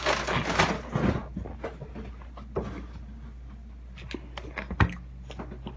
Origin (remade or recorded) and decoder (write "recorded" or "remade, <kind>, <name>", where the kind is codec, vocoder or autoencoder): recorded